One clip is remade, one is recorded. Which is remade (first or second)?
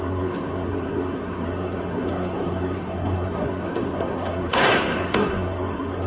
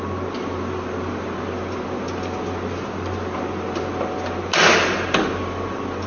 first